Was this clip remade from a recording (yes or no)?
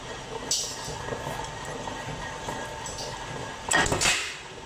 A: no